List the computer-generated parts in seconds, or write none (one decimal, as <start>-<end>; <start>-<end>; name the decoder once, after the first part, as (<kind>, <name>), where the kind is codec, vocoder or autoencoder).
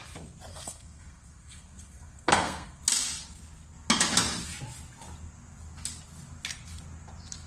0.5-2.8 (codec, SNAC)